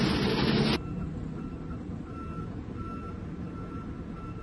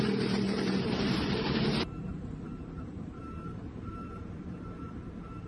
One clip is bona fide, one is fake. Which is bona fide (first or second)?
first